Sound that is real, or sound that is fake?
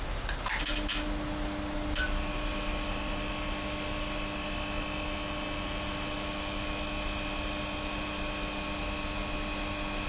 real